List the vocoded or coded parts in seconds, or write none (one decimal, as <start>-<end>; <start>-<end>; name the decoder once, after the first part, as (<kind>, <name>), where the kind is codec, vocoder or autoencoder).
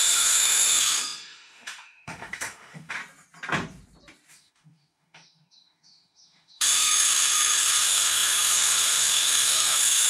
0.0-3.0 (autoencoder, DAC-VAE); 4.3-10.1